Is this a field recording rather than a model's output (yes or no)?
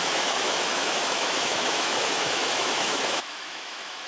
no